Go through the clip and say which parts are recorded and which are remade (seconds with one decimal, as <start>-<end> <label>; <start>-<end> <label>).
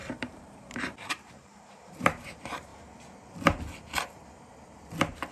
0.0-2.7 remade; 2.7-5.3 recorded